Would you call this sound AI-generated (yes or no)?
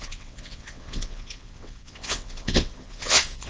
yes